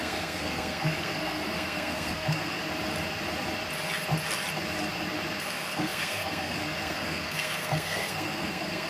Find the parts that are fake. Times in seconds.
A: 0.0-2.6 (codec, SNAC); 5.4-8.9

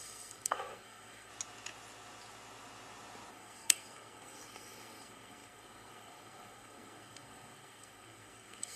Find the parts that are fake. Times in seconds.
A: 0.0-1.3 (codec, SNAC); 3.3-8.8